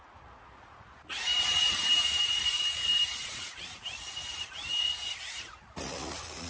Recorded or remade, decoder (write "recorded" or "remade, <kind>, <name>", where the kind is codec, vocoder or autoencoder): remade, vocoder, Vocos